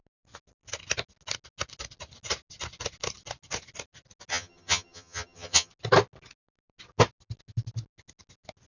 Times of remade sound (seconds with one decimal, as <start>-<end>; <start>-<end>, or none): 4.3-5.7

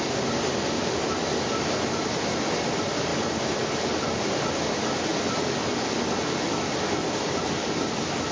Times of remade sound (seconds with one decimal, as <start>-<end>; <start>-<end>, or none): none

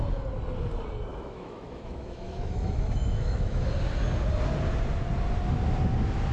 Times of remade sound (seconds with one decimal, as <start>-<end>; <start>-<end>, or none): 1.1-3.7

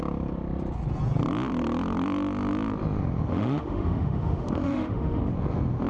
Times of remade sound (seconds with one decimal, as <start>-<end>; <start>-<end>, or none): 3.3-5.2

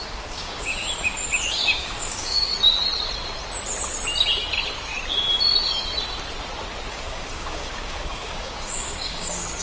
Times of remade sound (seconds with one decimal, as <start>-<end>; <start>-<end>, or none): 0.0-0.7; 1.5-2.5; 6.9-9.6

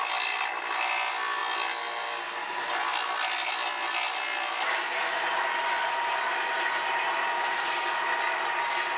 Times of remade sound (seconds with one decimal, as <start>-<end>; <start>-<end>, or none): none

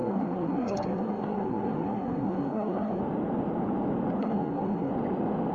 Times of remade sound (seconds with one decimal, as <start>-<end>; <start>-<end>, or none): 0.0-3.0; 4.2-4.9